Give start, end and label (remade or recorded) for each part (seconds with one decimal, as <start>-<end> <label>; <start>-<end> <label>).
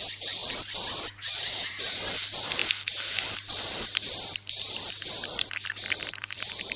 0.0-6.0 recorded; 6.0-6.8 remade